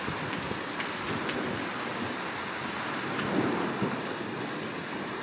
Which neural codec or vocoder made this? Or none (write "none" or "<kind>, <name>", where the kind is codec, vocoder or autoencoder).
none